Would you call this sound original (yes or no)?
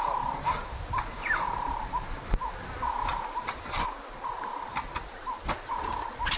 yes